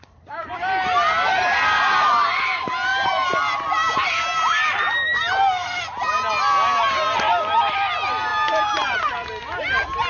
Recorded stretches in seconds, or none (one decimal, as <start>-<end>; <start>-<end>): 0.0-10.1